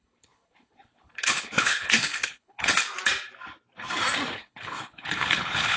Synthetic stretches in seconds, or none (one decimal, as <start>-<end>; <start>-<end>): 0.0-2.8; 4.3-5.8

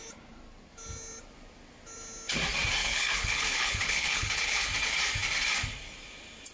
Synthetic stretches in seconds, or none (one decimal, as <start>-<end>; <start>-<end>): 2.8-4.7

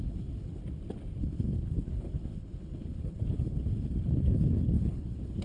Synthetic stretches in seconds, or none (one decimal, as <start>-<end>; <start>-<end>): 0.0-0.6; 1.2-5.4

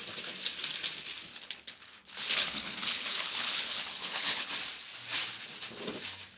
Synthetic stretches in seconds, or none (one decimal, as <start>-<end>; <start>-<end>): 1.3-4.5

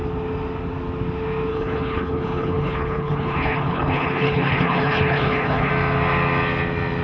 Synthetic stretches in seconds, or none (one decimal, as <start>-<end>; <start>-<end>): 1.5-5.7